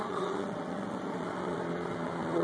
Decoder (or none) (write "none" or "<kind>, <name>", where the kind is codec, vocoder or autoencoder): vocoder, Vocos